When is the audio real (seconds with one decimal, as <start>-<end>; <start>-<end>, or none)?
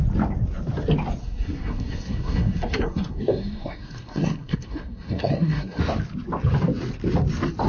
0.0-1.2; 5.8-7.7